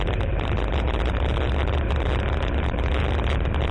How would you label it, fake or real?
real